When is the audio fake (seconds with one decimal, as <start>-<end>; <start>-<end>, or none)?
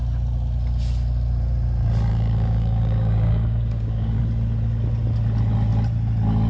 2.1-4.2